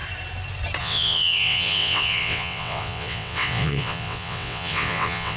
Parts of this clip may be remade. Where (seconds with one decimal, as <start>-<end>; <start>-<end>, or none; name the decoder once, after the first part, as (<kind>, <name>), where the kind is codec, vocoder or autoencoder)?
0.8-5.4 (vocoder, WaveNeXt)